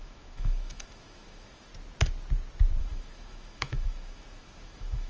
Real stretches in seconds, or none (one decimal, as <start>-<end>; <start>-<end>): 1.7-2.8

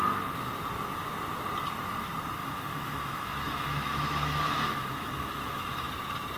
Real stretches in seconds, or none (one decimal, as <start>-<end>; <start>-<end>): 0.0-2.4; 5.9-6.4

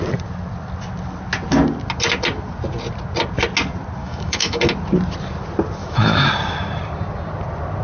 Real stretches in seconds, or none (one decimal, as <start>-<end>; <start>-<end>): 0.0-4.0; 4.6-5.8; 6.3-7.8

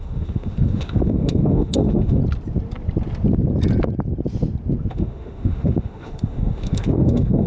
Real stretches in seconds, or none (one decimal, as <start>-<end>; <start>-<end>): 2.2-4.9

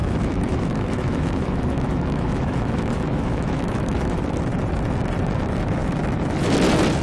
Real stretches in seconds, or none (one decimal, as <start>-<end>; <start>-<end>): 4.2-7.0

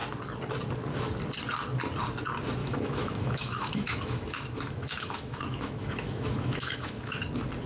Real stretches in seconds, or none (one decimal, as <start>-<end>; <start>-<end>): 0.0-2.6; 7.2-7.7

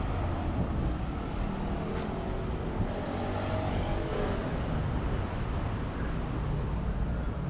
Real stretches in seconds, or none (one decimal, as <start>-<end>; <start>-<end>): 0.0-7.5